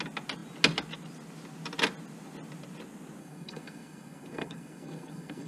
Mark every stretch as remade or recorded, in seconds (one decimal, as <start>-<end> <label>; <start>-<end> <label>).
0.0-3.2 recorded; 3.2-5.5 remade